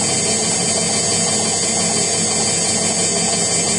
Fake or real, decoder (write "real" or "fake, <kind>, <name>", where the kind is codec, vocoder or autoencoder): real